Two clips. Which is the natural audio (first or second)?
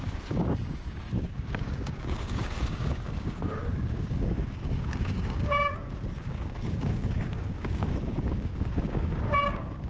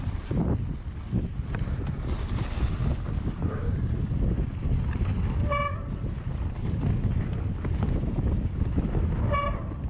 second